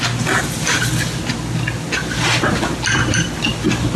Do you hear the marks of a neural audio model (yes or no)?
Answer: no